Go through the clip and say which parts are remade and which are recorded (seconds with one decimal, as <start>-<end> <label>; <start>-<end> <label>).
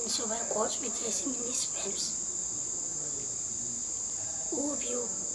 0.0-2.9 recorded; 2.9-4.8 remade; 4.8-5.3 recorded